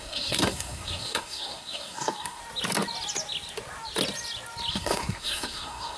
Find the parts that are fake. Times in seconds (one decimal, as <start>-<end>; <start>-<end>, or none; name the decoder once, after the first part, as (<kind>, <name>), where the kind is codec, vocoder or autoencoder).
0.0-2.4 (codec, SNAC); 4.7-6.0